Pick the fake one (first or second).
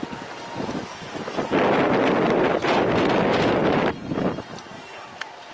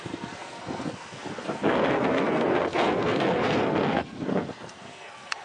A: second